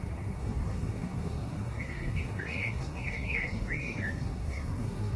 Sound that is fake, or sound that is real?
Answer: fake